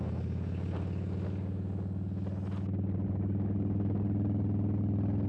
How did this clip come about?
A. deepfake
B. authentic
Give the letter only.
B